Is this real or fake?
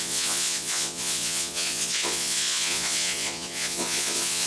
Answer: fake